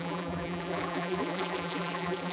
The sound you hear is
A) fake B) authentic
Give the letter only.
A